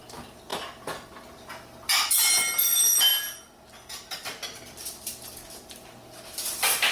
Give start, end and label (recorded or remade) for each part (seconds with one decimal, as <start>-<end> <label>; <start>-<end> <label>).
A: 0.0-6.9 recorded